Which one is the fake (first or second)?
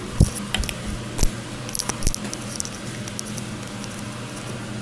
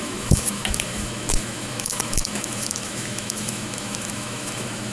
second